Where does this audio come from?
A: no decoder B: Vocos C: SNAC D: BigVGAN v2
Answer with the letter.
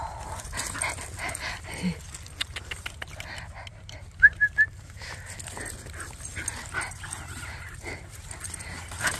A